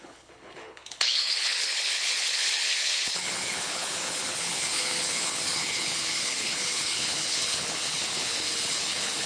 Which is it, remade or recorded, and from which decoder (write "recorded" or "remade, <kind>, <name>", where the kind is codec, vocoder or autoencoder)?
remade, codec, HILCodec